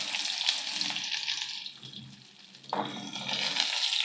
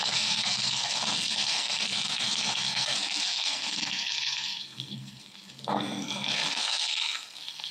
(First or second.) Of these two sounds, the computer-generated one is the second